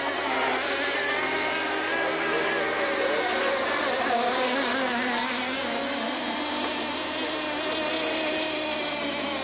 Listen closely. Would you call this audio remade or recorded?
recorded